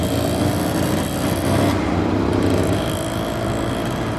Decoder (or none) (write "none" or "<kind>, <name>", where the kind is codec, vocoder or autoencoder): none